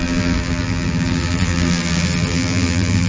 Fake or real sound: fake